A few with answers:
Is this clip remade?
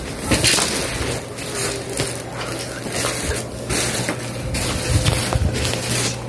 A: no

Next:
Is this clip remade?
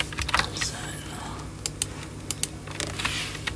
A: no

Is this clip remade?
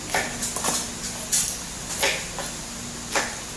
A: no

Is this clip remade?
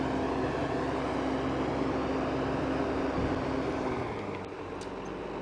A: no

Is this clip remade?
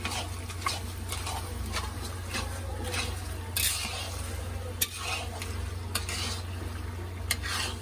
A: no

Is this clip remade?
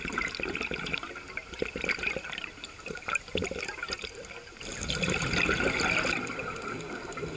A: no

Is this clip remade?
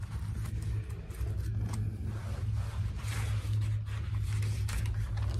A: no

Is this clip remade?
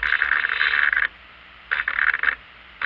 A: no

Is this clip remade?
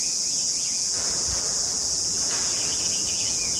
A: yes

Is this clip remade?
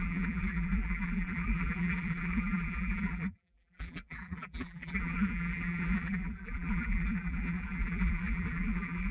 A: yes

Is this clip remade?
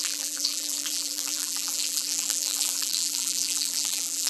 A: yes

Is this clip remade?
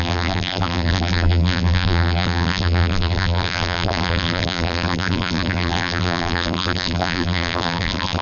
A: yes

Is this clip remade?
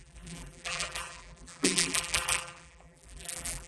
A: yes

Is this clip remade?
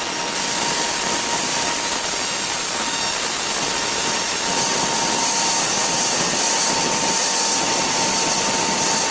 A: no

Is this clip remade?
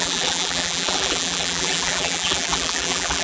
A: yes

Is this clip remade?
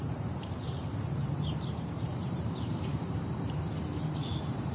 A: yes